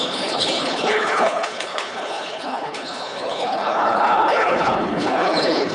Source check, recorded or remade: remade